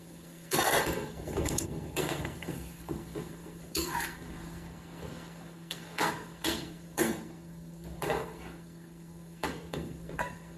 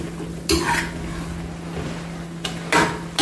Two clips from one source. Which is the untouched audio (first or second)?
second